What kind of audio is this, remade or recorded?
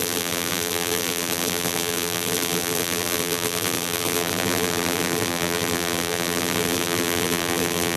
remade